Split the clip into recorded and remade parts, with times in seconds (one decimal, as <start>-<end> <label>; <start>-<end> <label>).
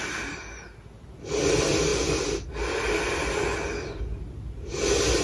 0.0-5.2 recorded